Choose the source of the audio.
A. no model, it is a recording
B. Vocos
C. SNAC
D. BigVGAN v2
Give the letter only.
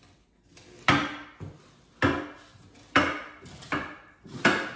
A